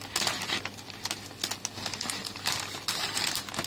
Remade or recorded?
recorded